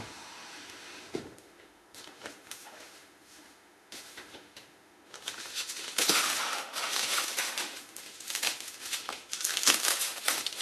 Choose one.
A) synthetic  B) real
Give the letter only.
A